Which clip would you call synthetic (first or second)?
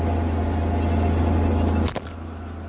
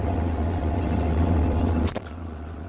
second